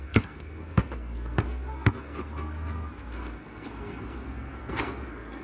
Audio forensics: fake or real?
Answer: fake